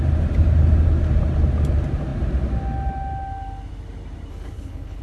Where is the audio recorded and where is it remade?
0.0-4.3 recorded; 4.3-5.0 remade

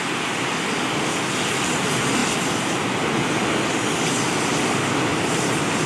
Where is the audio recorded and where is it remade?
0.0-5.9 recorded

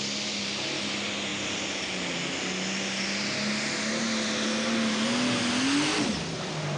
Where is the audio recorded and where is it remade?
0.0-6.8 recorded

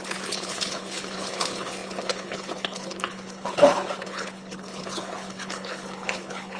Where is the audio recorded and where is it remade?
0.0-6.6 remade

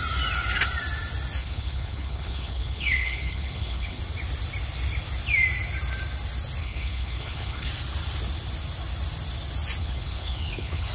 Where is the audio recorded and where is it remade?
0.0-1.4 recorded; 1.4-4.0 remade; 4.0-6.6 recorded; 6.6-7.7 remade; 7.7-9.8 recorded; 9.8-10.9 remade